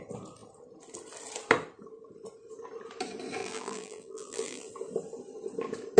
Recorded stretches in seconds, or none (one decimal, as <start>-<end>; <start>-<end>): 0.0-3.4; 4.7-6.0